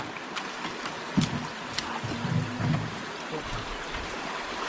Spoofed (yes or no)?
no